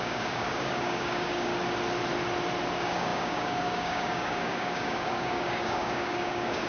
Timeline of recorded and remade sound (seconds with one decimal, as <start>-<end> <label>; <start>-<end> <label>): 0.0-1.5 remade; 1.5-2.7 recorded; 2.7-6.7 remade